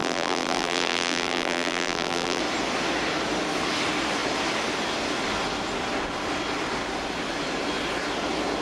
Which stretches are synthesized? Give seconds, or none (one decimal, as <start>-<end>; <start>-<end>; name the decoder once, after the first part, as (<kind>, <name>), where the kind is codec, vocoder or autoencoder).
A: 0.0-2.4 (vocoder, BigVGAN v2)